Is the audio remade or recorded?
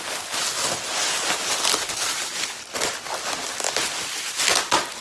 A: recorded